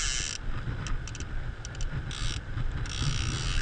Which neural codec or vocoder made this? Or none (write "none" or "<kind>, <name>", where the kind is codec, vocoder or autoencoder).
none